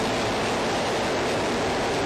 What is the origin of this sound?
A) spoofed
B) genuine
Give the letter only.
B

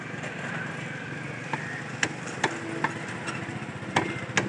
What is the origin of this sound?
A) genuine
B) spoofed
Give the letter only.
A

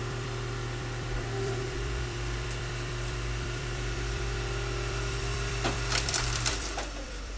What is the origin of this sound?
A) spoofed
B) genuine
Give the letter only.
A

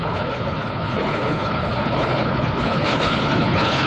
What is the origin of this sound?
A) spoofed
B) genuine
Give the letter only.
A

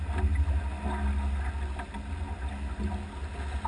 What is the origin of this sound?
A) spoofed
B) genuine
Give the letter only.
B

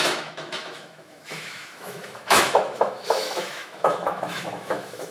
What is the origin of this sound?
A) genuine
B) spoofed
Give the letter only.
B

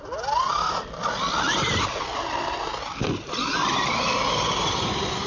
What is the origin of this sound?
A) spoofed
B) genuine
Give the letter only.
B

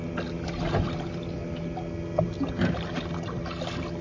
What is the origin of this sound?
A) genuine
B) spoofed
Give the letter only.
A